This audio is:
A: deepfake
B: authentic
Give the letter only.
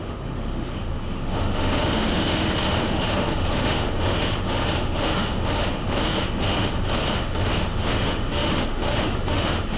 A